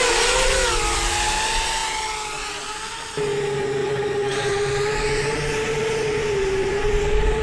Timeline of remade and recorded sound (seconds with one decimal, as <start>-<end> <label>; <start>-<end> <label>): 0.0-3.8 recorded; 3.8-6.9 remade; 6.9-7.4 recorded